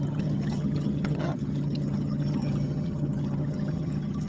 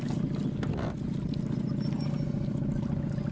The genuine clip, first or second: second